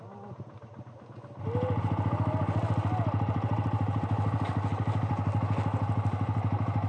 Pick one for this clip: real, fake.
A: real